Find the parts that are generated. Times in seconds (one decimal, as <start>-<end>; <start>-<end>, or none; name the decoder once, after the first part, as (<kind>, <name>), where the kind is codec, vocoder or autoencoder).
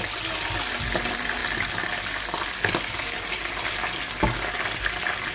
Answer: none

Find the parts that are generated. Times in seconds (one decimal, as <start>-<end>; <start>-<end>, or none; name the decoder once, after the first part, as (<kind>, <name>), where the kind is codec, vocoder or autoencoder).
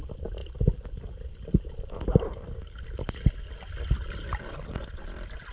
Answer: 0.4-2.0 (vocoder, BigVGAN v2)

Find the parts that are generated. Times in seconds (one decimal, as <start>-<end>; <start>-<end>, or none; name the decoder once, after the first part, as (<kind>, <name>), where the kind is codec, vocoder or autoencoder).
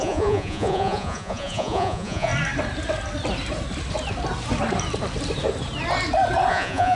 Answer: 0.0-2.3 (vocoder, Vocos); 6.5-7.0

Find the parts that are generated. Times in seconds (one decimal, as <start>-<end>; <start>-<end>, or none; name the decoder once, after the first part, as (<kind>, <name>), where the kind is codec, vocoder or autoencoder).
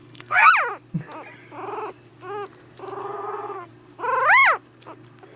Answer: 0.0-0.5 (codec, SNAC); 3.0-3.7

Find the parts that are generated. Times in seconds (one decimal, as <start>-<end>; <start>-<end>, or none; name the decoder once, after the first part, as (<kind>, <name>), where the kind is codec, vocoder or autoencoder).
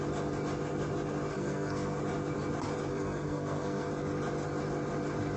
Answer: 1.3-2.0 (codec, SNAC); 2.9-3.9